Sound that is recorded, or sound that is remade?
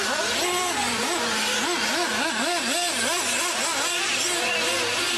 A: recorded